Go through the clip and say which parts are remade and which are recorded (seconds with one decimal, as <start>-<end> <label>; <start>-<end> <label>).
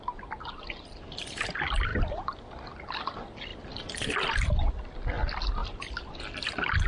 0.0-1.9 recorded; 1.9-2.9 remade; 2.9-3.5 recorded; 3.5-4.7 remade; 4.7-5.6 recorded; 5.6-6.5 remade; 6.5-6.9 recorded